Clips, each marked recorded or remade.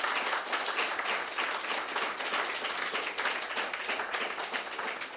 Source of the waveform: recorded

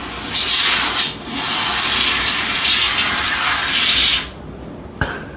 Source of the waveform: remade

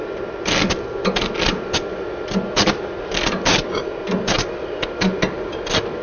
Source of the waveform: recorded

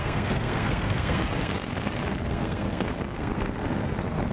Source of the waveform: remade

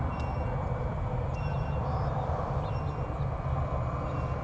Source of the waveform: remade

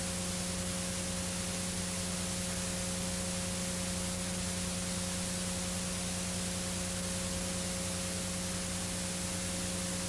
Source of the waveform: recorded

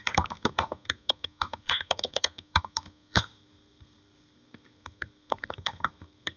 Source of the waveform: remade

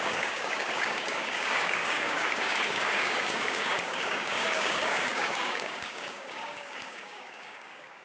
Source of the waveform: remade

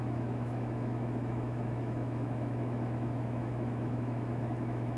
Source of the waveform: remade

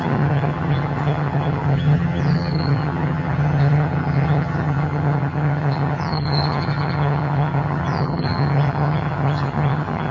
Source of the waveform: remade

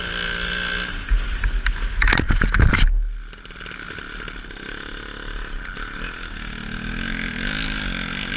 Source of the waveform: recorded